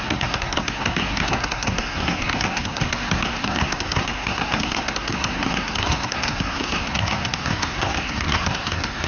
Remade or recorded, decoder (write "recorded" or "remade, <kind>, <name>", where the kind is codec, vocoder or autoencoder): remade, codec, SNAC